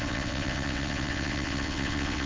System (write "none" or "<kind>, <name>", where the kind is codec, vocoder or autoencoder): vocoder, WaveNeXt